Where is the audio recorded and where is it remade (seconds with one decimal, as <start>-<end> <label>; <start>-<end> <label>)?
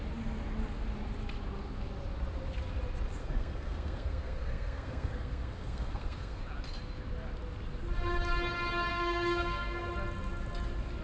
0.0-3.2 recorded; 3.2-6.4 remade; 6.4-8.9 recorded; 8.9-9.9 remade; 9.9-11.0 recorded